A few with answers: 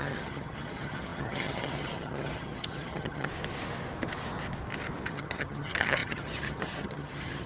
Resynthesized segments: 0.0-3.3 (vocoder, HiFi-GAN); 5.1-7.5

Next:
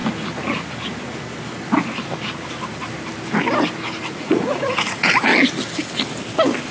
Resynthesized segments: 4.0-5.3 (vocoder, Vocos)

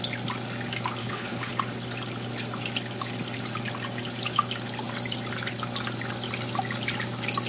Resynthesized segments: 1.0-1.5 (codec, HILCodec)

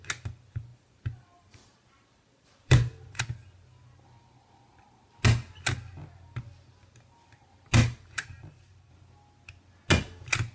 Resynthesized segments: 0.7-3.2 (vocoder, BigVGAN v2); 7.8-8.9

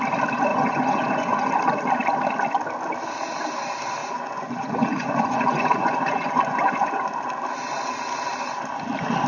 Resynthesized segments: 0.5-1.5 (vocoder, Vocos); 4.0-6.9

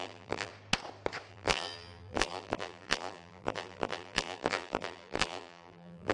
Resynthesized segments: 0.0-0.5 (vocoder, BigVGAN v2); 1.3-6.1